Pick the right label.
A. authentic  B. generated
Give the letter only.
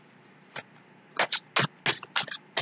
A